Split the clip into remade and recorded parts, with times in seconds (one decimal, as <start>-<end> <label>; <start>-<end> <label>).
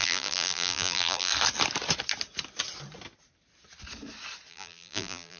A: 0.0-1.3 remade; 1.3-4.5 recorded; 4.5-5.4 remade